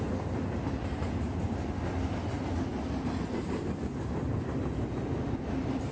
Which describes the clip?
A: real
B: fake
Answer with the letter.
A